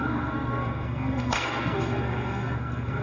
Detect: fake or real fake